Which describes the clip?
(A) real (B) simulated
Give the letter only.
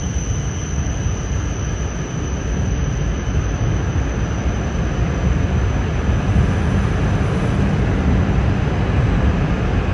A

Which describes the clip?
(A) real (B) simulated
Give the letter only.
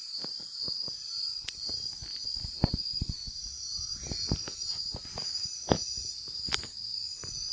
A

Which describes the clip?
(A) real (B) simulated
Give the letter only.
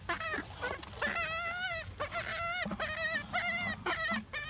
A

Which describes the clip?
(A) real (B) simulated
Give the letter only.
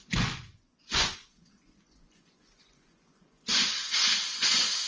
B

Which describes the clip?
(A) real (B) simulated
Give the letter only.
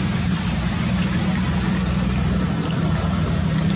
A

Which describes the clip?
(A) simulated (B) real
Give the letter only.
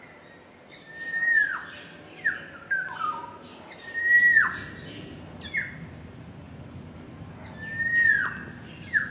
B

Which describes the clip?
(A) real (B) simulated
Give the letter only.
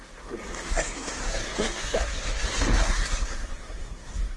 B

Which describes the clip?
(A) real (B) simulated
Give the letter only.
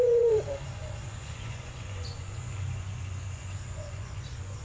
B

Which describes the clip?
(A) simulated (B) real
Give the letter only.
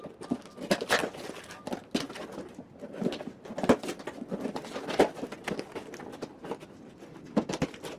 B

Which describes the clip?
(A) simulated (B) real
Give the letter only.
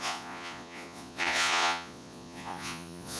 A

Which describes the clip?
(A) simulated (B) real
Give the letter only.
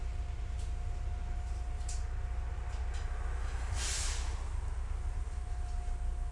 B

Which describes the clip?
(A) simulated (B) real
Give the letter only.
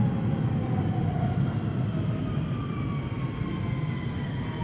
B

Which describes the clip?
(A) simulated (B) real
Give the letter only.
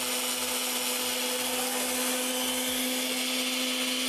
B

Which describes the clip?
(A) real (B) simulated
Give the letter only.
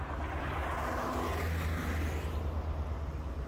A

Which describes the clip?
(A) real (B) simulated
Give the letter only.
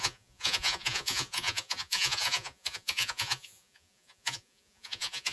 B